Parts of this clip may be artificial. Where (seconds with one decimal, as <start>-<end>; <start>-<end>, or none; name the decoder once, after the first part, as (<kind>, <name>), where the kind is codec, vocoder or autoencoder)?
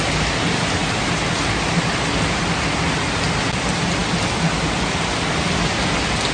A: none